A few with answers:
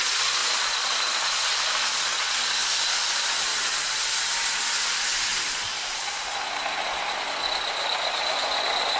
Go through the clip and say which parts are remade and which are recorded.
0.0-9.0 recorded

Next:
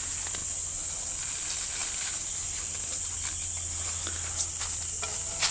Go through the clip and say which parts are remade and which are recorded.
0.0-5.5 recorded

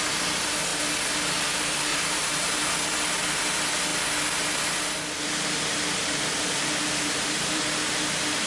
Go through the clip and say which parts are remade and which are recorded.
0.0-1.9 recorded; 1.9-2.6 remade; 2.6-6.0 recorded; 6.0-7.6 remade; 7.6-8.5 recorded